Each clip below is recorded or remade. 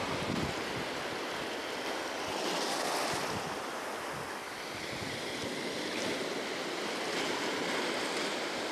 recorded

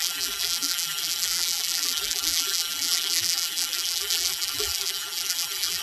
remade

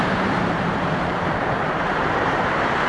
remade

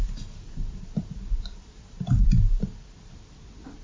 remade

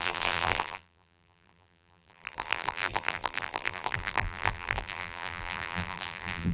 remade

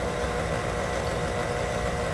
recorded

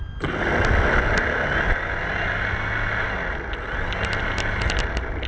recorded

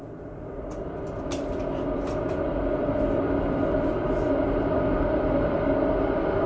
remade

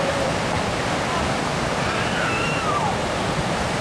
recorded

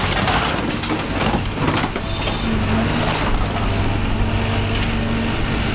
recorded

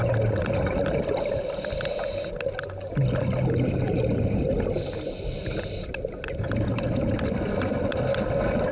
recorded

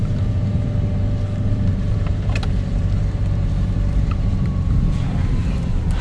remade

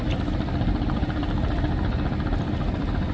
recorded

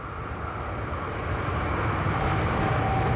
recorded